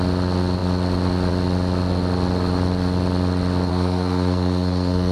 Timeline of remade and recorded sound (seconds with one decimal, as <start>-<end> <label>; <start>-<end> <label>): 0.0-3.7 recorded; 3.7-5.1 remade

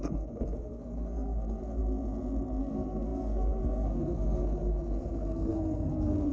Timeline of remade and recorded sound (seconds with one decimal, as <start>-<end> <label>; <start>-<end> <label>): 0.0-1.8 remade; 1.8-2.6 recorded; 2.6-6.3 remade

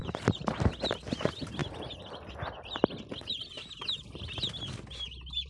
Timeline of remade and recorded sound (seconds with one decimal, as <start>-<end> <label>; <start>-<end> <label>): 0.0-5.5 recorded

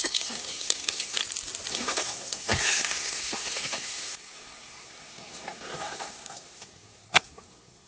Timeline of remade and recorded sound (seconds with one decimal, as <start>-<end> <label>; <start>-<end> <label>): 0.0-1.2 remade; 1.2-1.7 recorded; 1.7-7.9 remade

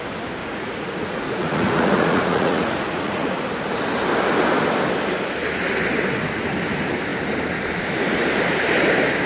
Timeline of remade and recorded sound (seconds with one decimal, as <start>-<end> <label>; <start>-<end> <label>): 0.0-0.4 recorded; 0.4-3.3 remade; 3.3-9.3 recorded

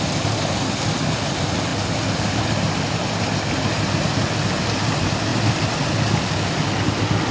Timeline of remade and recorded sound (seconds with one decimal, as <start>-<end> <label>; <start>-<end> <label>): 0.0-7.3 recorded